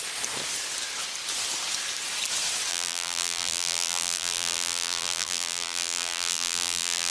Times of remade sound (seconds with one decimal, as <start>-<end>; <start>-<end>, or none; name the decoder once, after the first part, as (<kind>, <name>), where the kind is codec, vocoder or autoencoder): 2.7-7.1 (vocoder, BigVGAN v2)